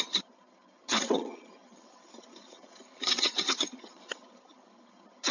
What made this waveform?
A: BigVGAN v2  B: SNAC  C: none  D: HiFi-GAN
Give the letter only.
D